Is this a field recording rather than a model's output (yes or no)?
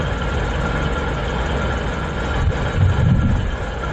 no